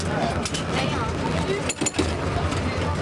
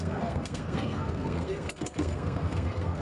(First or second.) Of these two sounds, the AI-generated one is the second